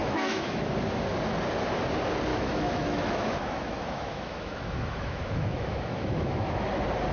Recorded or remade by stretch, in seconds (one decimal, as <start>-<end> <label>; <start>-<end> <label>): 0.0-0.7 remade; 0.7-2.3 recorded; 2.3-6.6 remade; 6.6-7.1 recorded